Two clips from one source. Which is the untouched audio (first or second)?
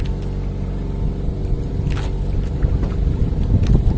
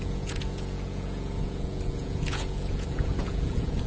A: first